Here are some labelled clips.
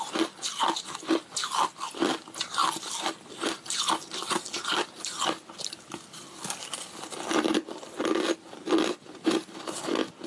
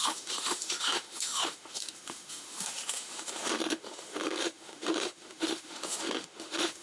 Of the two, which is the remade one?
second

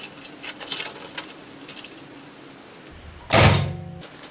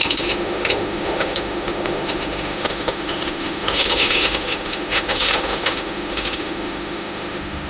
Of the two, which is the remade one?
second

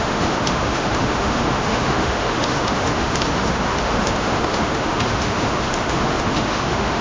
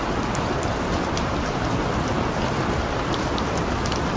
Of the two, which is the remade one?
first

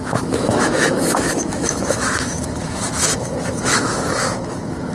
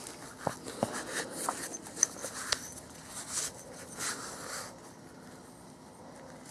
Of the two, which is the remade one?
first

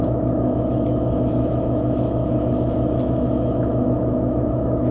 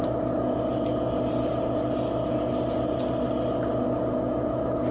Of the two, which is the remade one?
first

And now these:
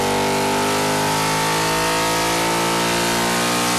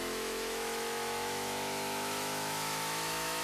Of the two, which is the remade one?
second